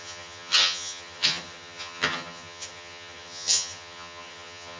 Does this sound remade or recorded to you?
remade